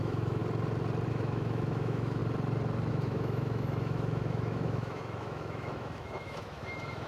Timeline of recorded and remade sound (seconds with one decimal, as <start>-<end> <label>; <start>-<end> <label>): 0.0-0.4 remade; 0.4-1.1 recorded; 1.1-2.2 remade; 2.2-2.9 recorded; 2.9-7.1 remade